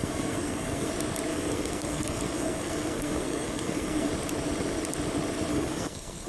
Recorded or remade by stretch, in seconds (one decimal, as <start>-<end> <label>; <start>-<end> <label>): 0.0-0.9 remade; 0.9-1.3 recorded; 1.3-4.1 remade; 4.1-5.5 recorded; 5.5-6.3 remade